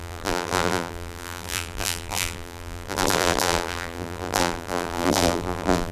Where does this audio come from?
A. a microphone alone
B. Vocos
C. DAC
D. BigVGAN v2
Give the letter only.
D